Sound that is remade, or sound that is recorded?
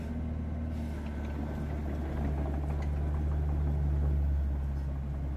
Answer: recorded